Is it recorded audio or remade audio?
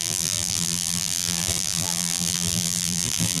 remade